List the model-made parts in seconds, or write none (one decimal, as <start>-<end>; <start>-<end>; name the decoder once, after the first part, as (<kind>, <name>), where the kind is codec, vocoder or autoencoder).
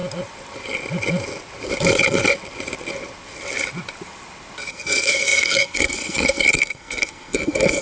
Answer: 4.7-7.8 (codec, SNAC)